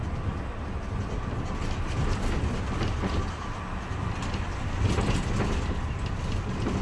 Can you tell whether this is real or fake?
real